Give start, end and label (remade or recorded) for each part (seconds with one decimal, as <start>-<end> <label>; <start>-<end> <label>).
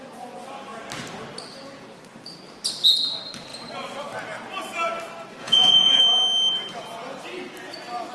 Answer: 0.0-5.4 recorded; 5.4-6.0 remade; 6.0-8.1 recorded